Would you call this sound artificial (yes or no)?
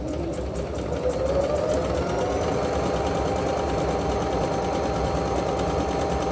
no